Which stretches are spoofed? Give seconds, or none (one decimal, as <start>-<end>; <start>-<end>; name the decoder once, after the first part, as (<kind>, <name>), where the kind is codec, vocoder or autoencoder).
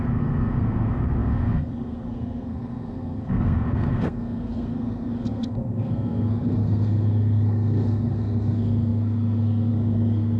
0.0-10.4 (codec, SNAC)